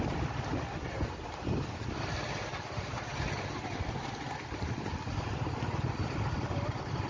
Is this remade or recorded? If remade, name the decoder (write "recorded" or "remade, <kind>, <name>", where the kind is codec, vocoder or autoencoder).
recorded